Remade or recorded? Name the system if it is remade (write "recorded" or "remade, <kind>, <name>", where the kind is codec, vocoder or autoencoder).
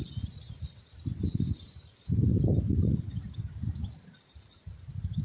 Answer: recorded